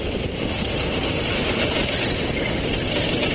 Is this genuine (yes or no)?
yes